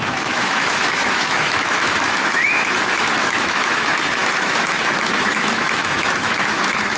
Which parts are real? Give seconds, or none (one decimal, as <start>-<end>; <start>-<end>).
none